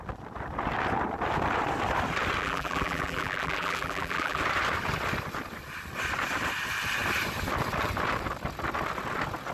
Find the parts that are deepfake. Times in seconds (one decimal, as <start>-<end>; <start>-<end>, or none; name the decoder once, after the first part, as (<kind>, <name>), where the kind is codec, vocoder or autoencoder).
2.4-4.4 (vocoder, BigVGAN v2)